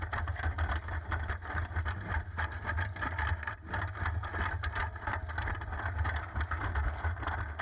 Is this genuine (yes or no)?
yes